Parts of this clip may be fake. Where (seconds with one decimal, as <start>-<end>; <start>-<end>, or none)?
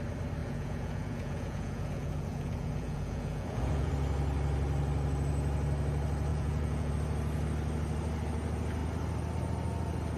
0.4-3.9; 6.3-6.9